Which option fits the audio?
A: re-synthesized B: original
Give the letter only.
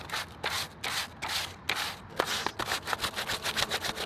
B